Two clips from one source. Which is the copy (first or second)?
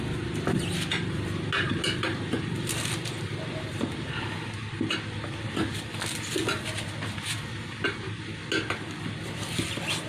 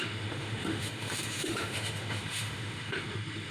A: second